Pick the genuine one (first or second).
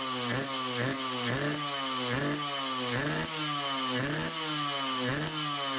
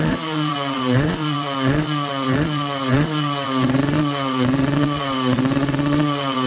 first